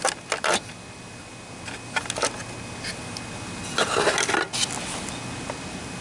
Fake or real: real